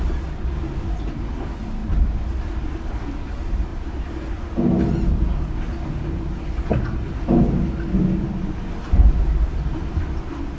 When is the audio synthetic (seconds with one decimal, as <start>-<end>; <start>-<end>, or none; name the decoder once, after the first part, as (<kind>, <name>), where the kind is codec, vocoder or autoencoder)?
none